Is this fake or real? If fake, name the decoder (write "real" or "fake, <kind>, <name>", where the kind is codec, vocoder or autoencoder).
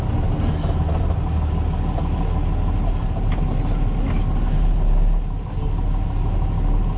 real